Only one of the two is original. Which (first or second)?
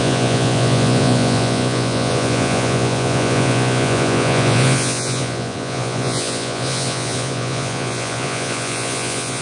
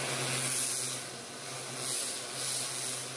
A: second